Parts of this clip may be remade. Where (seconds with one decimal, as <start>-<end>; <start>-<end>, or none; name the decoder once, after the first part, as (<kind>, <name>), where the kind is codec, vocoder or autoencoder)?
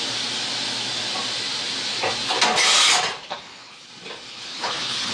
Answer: 3.2-3.9 (codec, HILCodec); 4.3-5.1